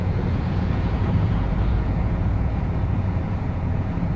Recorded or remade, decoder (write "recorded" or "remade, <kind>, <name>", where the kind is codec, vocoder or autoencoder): remade, vocoder, Vocos